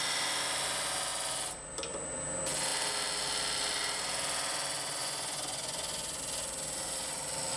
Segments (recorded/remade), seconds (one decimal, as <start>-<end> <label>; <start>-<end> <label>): 0.0-5.0 recorded; 5.0-6.2 remade; 6.2-7.6 recorded